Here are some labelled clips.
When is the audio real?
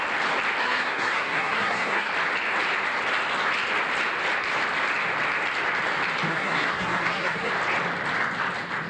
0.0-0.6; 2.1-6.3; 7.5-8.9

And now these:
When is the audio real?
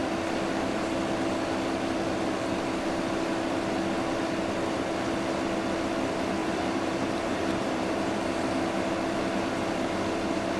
0.0-6.4; 8.1-10.6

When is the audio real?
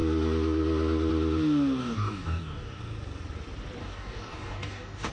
0.0-1.8; 2.8-3.8